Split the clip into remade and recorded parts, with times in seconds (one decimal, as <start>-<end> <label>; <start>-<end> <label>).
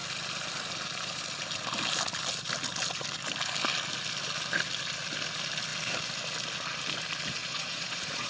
0.0-7.4 recorded; 7.4-8.3 remade